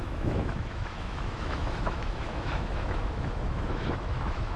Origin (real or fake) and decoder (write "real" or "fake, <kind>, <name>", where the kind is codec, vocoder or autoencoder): fake, autoencoder, DAC-VAE